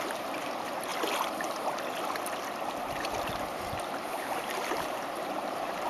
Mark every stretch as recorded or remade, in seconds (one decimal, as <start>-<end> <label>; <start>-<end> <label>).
0.0-0.9 remade; 0.9-3.1 recorded; 3.1-5.9 remade